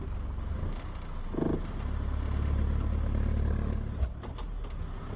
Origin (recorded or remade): recorded